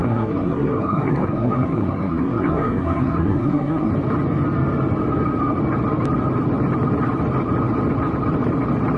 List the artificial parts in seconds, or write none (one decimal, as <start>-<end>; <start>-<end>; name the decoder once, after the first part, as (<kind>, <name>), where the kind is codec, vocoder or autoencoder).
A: 0.0-3.9 (codec, SNAC)